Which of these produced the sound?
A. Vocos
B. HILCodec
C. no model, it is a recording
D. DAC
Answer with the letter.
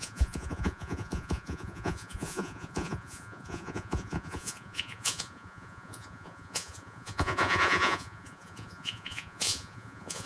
A